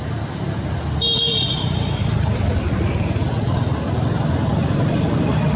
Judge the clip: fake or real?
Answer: real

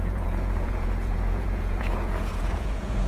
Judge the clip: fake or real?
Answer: fake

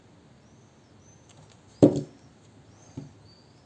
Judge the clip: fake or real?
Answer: real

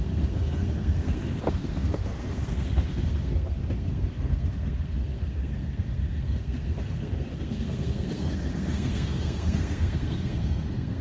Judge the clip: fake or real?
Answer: fake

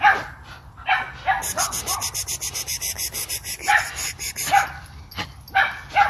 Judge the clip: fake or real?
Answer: real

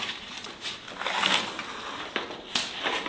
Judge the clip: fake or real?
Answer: real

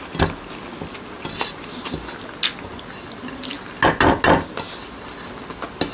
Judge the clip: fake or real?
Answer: real